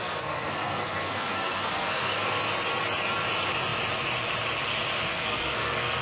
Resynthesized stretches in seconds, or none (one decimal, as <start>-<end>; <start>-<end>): 0.0-2.5; 5.1-6.0